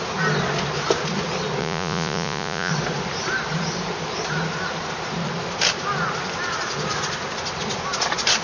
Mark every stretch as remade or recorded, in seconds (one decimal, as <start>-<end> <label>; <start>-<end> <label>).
0.0-1.6 recorded; 1.6-2.7 remade; 2.7-8.4 recorded